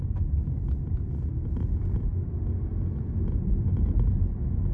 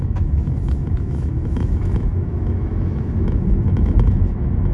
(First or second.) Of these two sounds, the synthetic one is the second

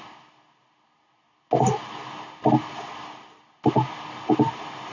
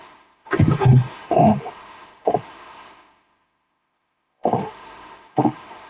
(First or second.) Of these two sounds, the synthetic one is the second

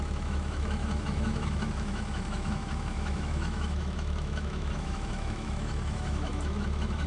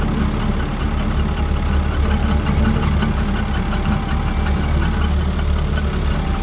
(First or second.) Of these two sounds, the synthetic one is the first